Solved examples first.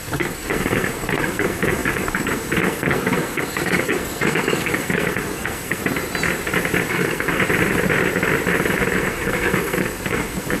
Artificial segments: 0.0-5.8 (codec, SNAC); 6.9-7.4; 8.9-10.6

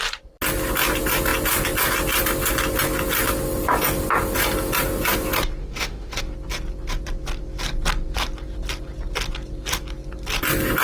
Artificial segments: 5.6-6.2 (autoencoder, DAC-VAE)

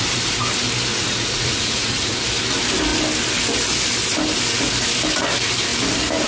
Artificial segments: 0.9-2.2 (vocoder, Vocos)